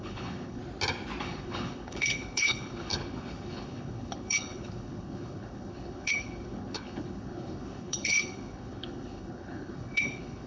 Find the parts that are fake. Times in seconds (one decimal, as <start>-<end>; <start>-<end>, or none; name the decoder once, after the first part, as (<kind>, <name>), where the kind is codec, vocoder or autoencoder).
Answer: 0.0-0.6 (codec, HILCodec); 1.2-10.5